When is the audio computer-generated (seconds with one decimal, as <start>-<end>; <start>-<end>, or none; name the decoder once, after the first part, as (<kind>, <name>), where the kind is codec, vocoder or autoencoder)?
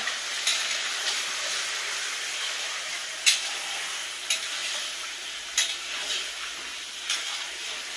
0.5-1.5 (vocoder, BigVGAN v2); 4.6-5.5